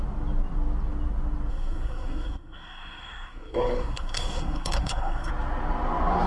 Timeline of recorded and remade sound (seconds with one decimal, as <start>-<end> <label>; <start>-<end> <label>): 0.0-1.5 recorded; 1.5-5.3 remade; 5.3-6.3 recorded